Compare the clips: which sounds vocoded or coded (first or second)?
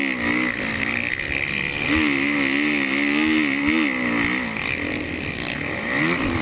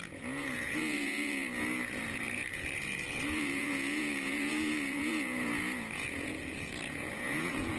second